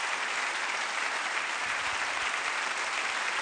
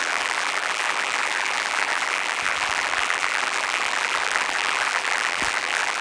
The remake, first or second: second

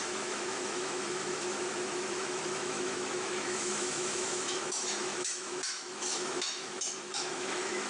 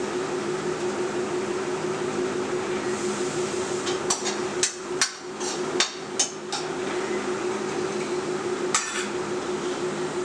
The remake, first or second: first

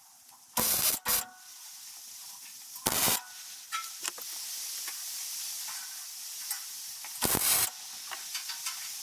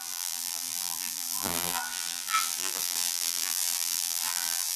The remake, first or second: second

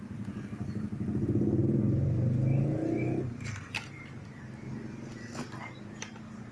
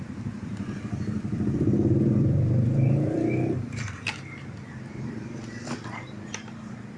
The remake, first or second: second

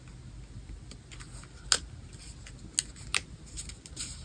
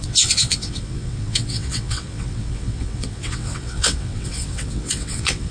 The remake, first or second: second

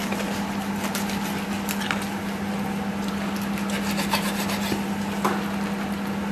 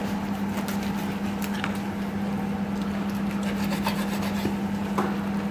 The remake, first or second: second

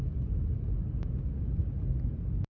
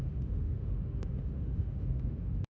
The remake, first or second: second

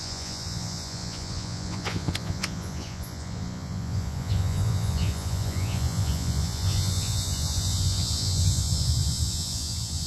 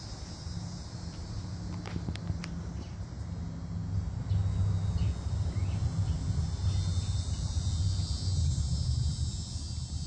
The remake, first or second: first